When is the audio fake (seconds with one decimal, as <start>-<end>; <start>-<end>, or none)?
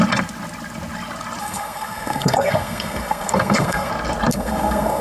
1.4-3.9; 4.3-5.0